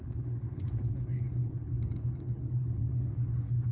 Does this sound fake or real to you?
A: fake